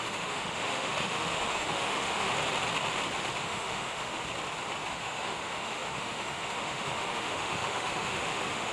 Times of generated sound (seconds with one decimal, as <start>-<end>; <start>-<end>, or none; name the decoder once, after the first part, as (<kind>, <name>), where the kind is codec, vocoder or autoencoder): 0.0-2.3 (autoencoder, DAC-VAE); 3.4-4.2; 4.9-8.7